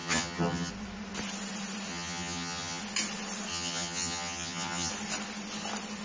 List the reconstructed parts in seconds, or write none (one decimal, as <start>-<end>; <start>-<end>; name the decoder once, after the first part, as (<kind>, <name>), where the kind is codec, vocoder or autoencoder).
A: 0.0-0.7 (vocoder, HiFi-GAN); 1.9-2.8; 3.5-4.9